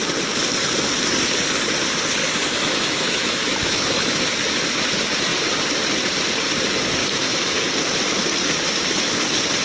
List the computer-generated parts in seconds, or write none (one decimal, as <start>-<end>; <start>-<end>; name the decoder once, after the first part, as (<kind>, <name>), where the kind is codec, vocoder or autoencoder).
2.2-4.2 (autoencoder, DAC-VAE); 7.0-7.6